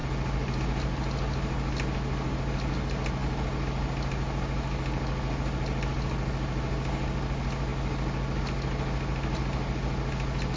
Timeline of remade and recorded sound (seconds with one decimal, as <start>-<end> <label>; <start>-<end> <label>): 0.0-10.6 recorded